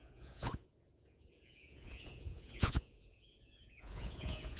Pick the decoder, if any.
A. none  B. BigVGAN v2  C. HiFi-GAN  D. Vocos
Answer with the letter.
D